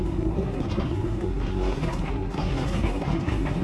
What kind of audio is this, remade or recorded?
remade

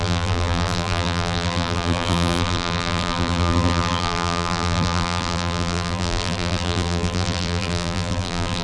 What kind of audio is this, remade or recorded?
remade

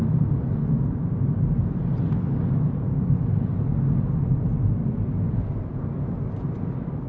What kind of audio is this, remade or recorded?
recorded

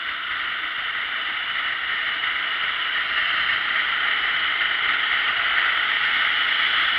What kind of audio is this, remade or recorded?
recorded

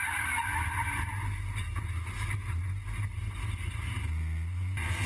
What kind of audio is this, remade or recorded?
recorded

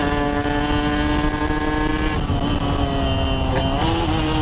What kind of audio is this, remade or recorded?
recorded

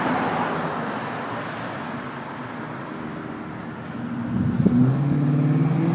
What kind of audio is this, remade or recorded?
recorded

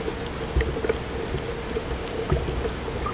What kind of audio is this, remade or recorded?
recorded